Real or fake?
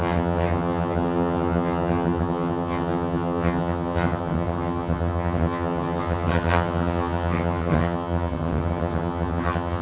fake